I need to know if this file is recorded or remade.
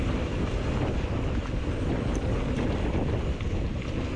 recorded